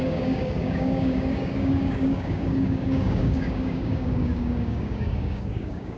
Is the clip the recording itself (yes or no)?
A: no